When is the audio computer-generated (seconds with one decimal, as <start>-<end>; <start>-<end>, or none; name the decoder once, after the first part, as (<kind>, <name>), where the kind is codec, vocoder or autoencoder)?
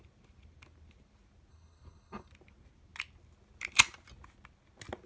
1.5-2.3 (codec, HILCodec)